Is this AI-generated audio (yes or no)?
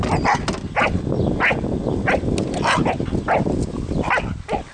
no